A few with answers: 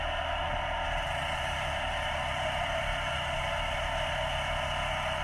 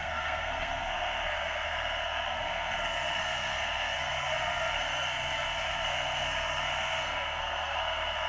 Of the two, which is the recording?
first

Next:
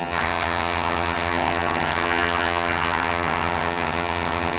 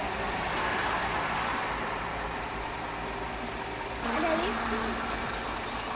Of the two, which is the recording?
second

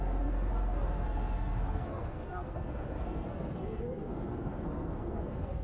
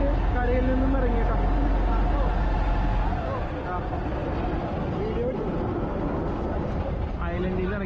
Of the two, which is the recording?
second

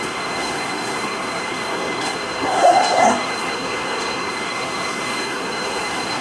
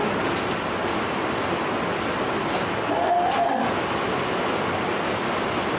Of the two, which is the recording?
second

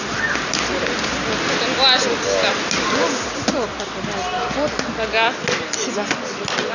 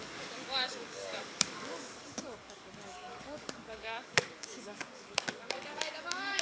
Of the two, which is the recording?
first